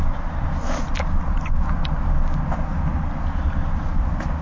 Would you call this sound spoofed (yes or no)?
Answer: no